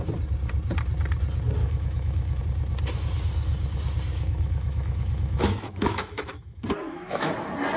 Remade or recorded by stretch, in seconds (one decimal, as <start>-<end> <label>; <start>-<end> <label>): 0.0-1.6 recorded; 1.6-2.4 remade; 2.4-4.1 recorded; 4.1-7.3 remade; 7.3-7.8 recorded

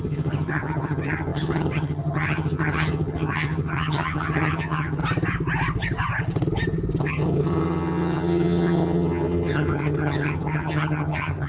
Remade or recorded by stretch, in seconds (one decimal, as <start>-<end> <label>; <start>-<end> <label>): 0.0-5.0 remade; 5.0-7.0 recorded; 7.0-11.5 remade

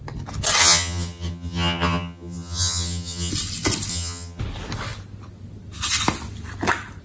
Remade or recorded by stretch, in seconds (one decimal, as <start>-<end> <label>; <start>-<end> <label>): 0.0-0.6 recorded; 0.6-3.3 remade; 3.3-3.9 recorded; 3.9-4.4 remade; 4.4-7.0 recorded

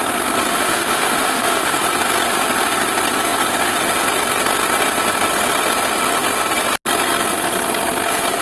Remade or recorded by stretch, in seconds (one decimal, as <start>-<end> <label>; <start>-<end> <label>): 0.0-0.5 recorded; 0.5-1.8 remade; 1.8-8.4 recorded

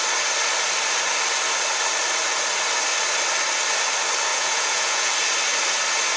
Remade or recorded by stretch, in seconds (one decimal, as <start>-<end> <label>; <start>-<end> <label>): 0.0-4.3 recorded; 4.3-5.1 remade; 5.1-6.2 recorded

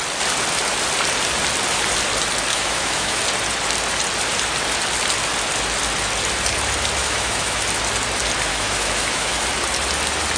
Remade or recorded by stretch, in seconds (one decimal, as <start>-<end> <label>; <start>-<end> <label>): 0.0-2.5 recorded; 2.5-3.2 remade; 3.2-7.0 recorded; 7.0-7.6 remade; 7.6-8.5 recorded; 8.5-9.4 remade; 9.4-10.4 recorded

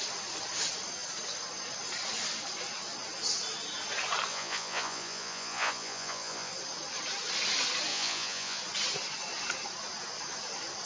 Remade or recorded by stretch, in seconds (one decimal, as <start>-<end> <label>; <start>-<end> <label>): 0.0-4.3 recorded; 4.3-6.5 remade; 6.5-7.9 recorded; 7.9-8.6 remade; 8.6-10.9 recorded

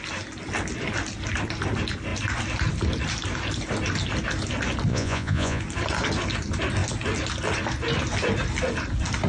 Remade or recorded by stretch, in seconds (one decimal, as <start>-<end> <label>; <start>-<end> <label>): 0.0-4.9 recorded; 4.9-5.6 remade; 5.6-9.3 recorded